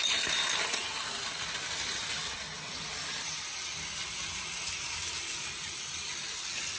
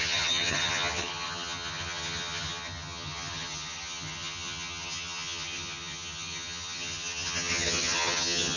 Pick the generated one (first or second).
second